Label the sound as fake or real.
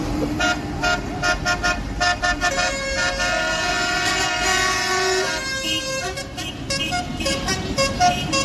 fake